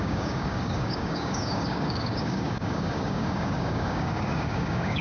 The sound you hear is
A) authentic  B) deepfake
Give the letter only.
B